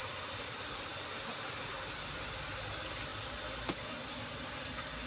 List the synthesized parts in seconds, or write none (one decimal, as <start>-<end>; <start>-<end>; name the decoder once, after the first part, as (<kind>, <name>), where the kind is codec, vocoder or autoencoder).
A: none